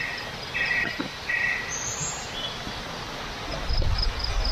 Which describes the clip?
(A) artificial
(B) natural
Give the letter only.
B